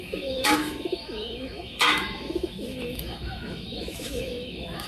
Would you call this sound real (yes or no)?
no